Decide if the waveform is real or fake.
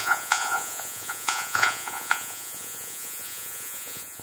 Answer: fake